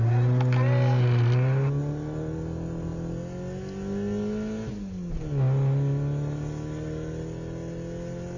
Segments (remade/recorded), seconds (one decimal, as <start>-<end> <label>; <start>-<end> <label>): 0.0-8.4 recorded